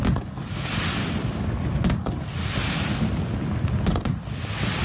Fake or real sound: real